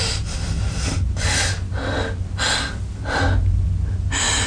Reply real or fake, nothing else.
real